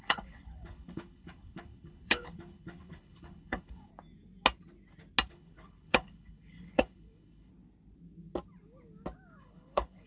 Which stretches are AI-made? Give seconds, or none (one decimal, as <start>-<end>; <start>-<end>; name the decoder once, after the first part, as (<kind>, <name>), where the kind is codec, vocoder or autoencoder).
0.0-3.9 (codec, HILCodec); 5.3-7.5; 9.4-10.1